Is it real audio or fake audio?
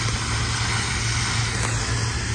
real